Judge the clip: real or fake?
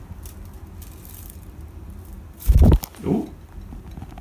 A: real